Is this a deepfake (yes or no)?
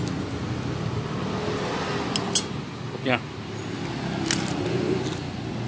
no